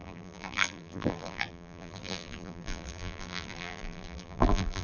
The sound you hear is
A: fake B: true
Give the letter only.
A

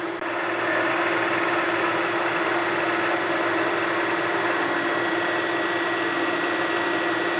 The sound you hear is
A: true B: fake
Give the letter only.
A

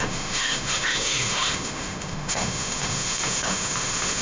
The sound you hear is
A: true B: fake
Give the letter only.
B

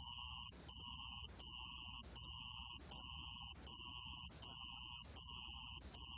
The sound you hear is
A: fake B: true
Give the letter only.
B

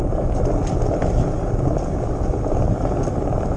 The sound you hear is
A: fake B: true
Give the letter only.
B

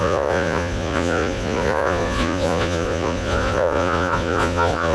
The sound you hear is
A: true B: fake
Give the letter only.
B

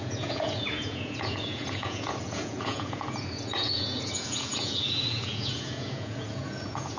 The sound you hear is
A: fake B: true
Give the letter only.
A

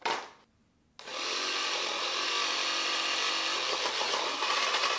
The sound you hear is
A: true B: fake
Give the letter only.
A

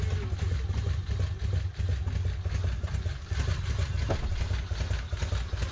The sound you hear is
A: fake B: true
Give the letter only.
B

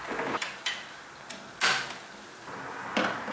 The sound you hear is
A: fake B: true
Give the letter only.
B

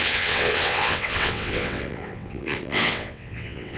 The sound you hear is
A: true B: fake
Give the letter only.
B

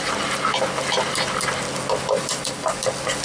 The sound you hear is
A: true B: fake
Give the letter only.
A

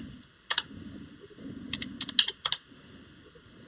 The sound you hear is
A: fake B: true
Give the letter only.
B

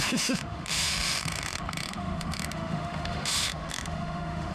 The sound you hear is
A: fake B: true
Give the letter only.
A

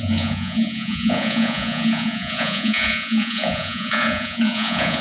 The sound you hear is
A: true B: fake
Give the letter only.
B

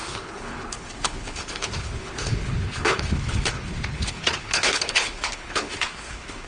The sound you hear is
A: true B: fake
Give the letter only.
B